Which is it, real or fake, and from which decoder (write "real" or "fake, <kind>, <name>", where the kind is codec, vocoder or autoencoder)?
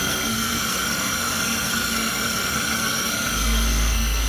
fake, codec, SNAC